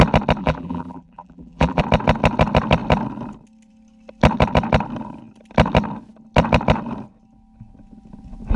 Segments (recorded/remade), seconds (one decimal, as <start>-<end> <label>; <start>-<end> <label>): 0.0-0.4 recorded; 0.4-1.8 remade; 1.8-8.6 recorded